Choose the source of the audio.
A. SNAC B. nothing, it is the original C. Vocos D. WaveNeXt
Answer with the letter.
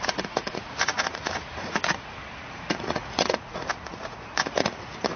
C